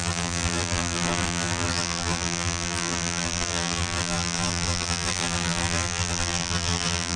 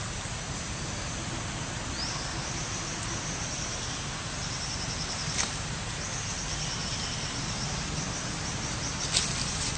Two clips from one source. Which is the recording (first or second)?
second